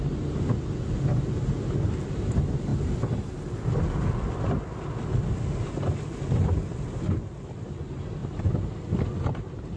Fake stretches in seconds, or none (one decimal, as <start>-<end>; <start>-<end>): none